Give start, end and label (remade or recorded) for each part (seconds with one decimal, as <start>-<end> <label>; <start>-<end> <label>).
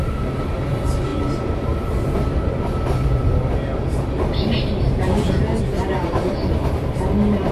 0.0-7.5 recorded